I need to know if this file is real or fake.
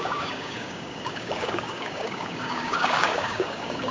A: fake